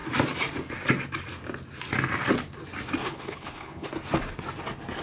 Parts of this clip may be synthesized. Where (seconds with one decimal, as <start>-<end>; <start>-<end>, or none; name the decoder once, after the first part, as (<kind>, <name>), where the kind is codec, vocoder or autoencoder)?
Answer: 3.0-3.9 (codec, HILCodec)

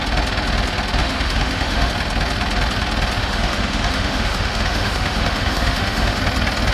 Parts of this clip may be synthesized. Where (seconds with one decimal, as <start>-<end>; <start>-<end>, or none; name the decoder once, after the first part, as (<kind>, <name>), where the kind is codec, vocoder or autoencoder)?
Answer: 1.0-1.9 (autoencoder, DAC-VAE); 3.2-6.2

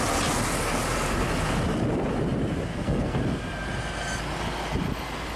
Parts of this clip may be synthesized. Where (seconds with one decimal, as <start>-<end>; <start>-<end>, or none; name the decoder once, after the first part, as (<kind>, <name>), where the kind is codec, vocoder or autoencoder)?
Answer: 2.7-3.2 (codec, SNAC)

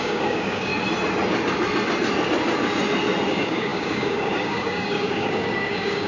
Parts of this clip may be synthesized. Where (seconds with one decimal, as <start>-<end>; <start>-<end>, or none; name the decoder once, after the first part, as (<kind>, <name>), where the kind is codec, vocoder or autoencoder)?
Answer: 0.0-0.7 (codec, DAC); 3.3-6.1

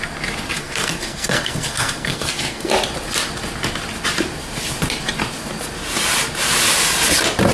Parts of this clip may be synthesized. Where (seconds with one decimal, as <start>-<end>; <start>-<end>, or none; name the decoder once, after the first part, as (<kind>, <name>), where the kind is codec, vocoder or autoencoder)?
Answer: 0.6-2.7 (codec, SNAC)